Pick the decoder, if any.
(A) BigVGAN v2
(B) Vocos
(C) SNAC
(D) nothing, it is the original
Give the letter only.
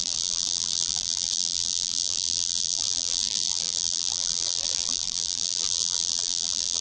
A